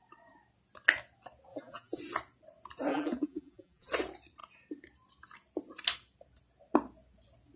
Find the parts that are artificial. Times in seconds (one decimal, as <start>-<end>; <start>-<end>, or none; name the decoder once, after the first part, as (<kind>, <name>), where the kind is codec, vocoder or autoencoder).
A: 1.5-2.0 (vocoder, BigVGAN v2); 2.9-3.9